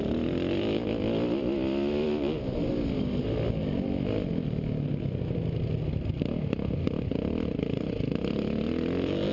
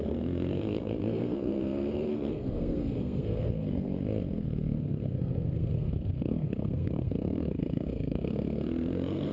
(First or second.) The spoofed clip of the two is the second